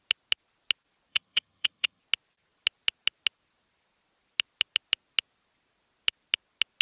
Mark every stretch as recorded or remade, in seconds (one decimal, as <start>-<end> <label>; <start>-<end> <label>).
0.0-1.1 recorded; 1.1-2.0 remade; 2.0-6.8 recorded